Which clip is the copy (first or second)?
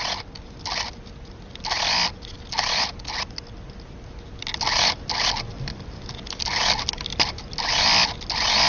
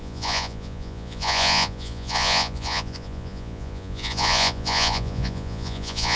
second